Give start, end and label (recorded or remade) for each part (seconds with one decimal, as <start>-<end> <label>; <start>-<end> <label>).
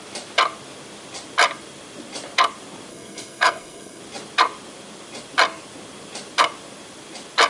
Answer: 0.0-2.9 recorded; 2.9-4.0 remade; 4.0-7.5 recorded